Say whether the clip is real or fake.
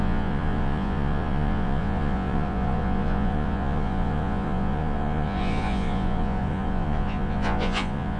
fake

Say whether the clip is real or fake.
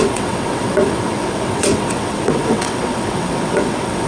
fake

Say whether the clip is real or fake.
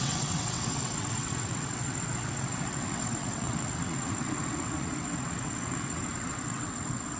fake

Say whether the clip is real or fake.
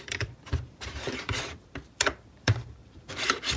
fake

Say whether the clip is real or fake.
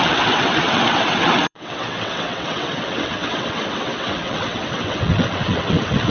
fake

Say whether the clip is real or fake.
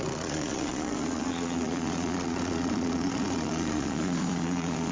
fake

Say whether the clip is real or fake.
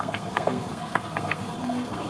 fake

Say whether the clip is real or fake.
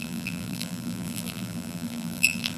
fake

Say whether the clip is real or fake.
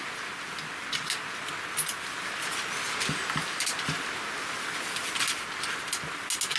real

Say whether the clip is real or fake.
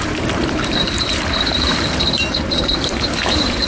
fake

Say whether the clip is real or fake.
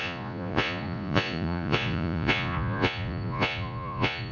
fake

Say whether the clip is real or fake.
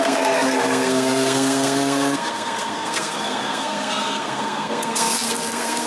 fake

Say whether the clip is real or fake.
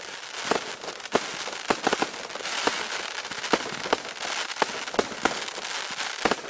real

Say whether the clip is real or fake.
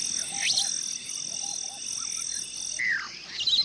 real